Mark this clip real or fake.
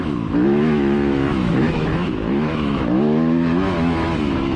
fake